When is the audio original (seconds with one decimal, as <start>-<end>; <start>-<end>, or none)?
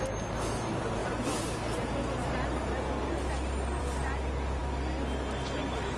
0.0-6.0